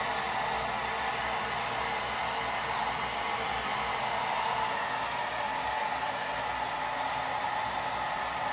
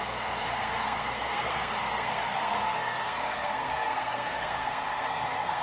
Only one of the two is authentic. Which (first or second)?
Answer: first